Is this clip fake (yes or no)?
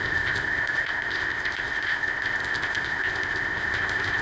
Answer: yes